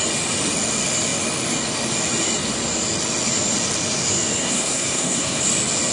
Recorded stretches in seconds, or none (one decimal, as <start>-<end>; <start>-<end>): 0.0-4.4; 5.4-5.9